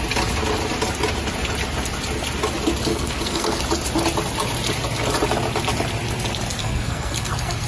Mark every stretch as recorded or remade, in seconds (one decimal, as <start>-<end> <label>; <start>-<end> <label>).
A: 0.0-2.9 recorded; 2.9-3.6 remade; 3.6-6.6 recorded; 6.6-7.7 remade